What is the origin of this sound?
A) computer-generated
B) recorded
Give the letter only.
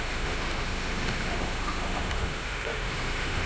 A